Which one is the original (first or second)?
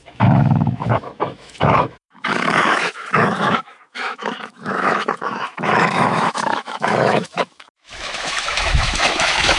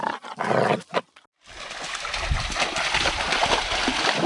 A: second